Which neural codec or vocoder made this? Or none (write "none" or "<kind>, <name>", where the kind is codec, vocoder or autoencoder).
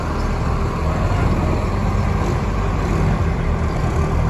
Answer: vocoder, BigVGAN v2